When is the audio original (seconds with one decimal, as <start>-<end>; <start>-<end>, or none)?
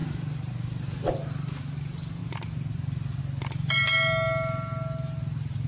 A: 1.1-2.2; 3.2-5.7